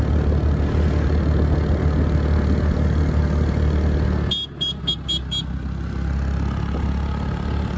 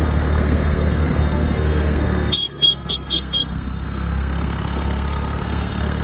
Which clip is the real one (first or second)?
first